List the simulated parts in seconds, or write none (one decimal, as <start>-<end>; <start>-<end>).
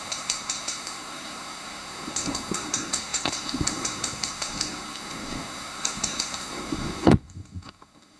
0.0-8.2